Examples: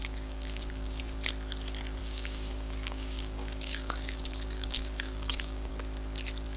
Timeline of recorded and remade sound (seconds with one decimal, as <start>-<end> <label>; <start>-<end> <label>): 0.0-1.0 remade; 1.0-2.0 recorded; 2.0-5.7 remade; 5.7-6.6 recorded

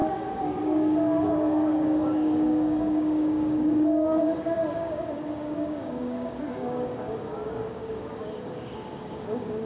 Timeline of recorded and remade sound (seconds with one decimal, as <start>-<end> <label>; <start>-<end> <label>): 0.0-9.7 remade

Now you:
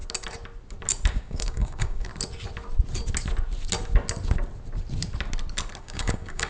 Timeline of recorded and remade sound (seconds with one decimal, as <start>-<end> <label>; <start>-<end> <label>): 0.0-1.1 recorded; 1.1-2.1 remade; 2.1-5.8 recorded; 5.8-6.5 remade

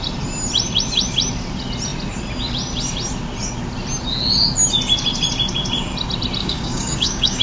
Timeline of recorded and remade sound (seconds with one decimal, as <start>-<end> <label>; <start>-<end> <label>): 0.0-6.4 recorded; 6.4-7.4 remade